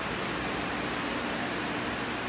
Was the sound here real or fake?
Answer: real